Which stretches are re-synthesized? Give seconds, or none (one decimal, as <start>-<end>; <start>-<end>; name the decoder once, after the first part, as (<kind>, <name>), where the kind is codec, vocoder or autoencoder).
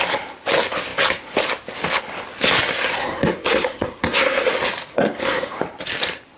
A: 3.0-4.5 (codec, SNAC); 4.9-5.6